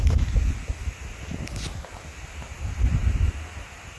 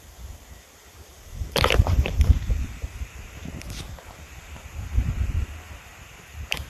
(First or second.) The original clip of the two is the first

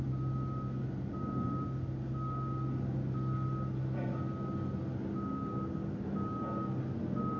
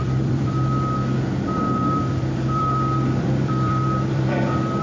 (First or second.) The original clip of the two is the first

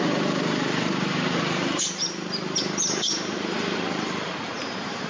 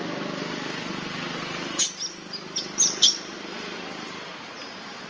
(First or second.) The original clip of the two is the second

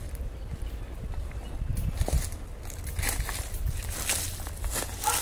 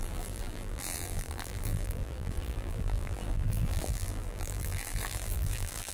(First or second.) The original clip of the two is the first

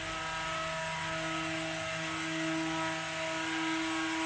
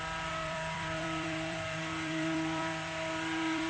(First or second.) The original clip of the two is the first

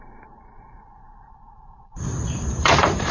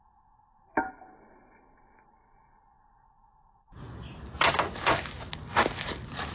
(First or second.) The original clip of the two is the second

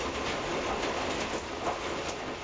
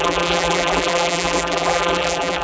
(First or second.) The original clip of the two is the first